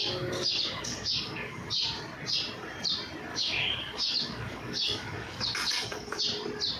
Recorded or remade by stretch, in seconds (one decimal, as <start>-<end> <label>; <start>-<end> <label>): 0.0-1.7 remade; 1.7-3.3 recorded; 3.3-6.2 remade; 6.2-6.8 recorded